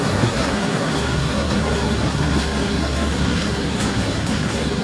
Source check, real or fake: fake